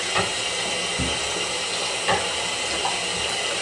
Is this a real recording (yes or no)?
yes